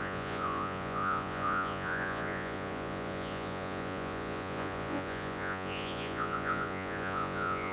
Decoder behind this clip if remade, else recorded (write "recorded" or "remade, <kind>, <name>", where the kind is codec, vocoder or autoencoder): remade, vocoder, Vocos